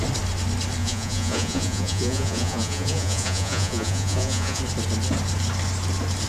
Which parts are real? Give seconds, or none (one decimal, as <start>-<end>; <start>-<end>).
0.0-0.8; 4.6-6.3